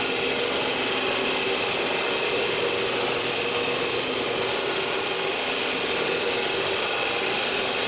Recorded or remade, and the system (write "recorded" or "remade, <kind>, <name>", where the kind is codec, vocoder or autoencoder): recorded